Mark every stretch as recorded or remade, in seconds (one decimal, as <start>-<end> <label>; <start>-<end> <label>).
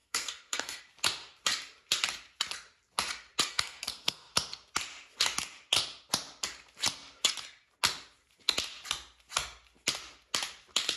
0.0-0.8 remade; 0.8-3.5 recorded; 3.5-4.3 remade; 4.3-11.0 recorded